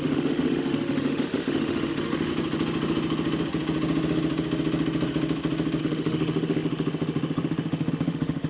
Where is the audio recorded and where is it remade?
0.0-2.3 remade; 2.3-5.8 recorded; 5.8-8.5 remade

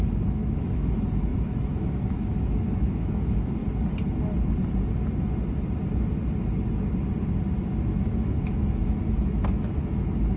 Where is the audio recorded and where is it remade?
0.0-3.6 remade; 3.6-7.5 recorded; 7.5-10.4 remade

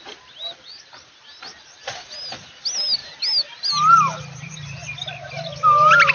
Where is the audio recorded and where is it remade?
0.0-6.1 recorded

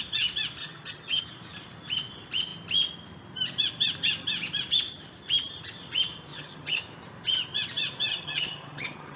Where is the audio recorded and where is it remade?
0.0-0.6 recorded; 0.6-1.2 remade; 1.2-6.3 recorded; 6.3-6.8 remade; 6.8-8.1 recorded; 8.1-9.2 remade